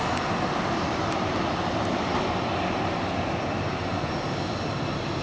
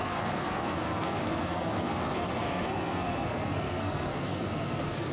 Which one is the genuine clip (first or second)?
first